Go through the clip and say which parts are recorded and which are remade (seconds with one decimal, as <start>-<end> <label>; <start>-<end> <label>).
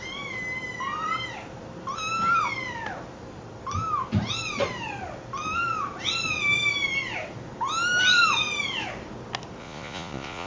0.0-9.6 recorded; 9.6-10.5 remade